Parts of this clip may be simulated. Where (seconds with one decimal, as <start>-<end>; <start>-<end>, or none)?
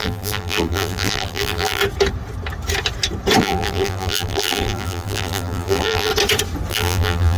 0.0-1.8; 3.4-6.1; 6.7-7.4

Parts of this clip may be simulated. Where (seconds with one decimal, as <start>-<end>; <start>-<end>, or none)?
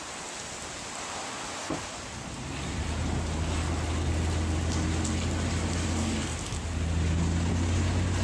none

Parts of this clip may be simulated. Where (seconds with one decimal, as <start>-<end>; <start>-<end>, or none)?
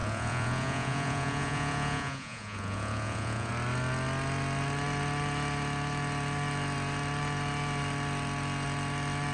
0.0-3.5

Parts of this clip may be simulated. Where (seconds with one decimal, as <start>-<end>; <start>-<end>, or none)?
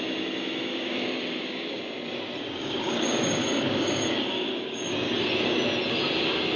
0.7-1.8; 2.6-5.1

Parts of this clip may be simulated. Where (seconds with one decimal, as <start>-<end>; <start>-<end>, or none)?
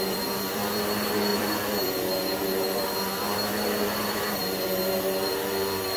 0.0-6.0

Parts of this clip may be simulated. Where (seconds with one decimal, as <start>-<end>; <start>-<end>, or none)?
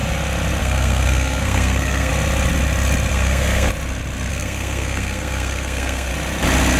0.6-2.1; 3.1-3.7; 4.3-6.1